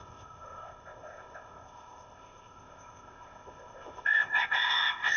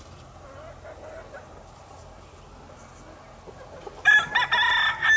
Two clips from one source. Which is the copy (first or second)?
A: first